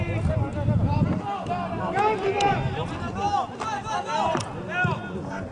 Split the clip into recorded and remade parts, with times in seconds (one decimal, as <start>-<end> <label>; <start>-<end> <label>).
0.0-5.5 recorded